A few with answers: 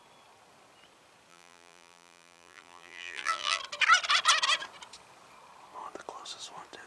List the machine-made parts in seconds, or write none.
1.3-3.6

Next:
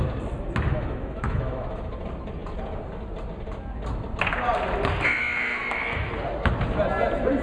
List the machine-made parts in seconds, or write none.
0.7-1.9; 5.2-6.1

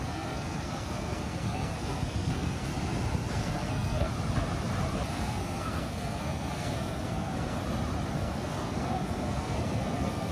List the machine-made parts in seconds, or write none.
0.0-2.7; 3.3-4.1; 5.1-7.6; 8.1-10.3

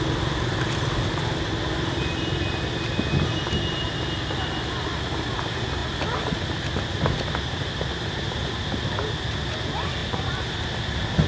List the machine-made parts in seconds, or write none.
none